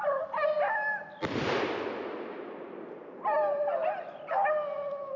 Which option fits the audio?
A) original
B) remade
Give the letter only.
A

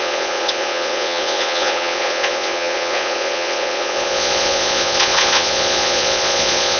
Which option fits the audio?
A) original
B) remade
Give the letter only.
B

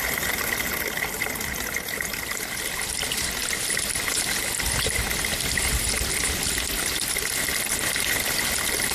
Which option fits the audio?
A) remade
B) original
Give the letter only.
B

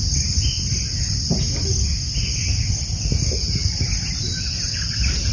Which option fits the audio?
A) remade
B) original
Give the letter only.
B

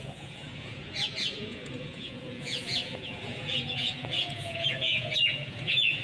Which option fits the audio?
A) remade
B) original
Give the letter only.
A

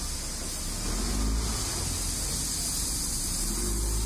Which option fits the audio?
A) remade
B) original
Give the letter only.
B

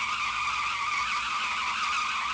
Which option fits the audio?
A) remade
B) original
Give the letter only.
B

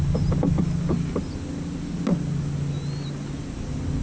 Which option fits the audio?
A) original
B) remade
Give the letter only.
A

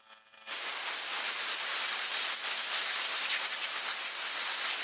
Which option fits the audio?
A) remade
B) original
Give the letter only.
B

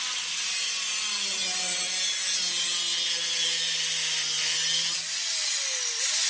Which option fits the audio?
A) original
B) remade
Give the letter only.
A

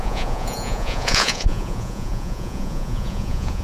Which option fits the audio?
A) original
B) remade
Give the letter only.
B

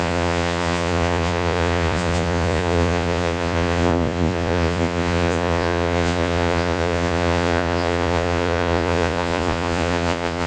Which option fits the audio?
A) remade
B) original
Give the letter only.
A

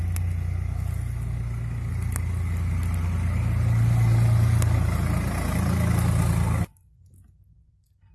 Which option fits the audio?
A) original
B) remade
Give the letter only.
A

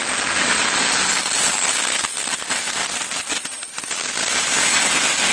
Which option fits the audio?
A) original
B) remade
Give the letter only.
A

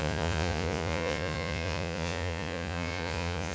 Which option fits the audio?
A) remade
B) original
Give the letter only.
A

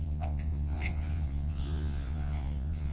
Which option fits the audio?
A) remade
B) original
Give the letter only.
A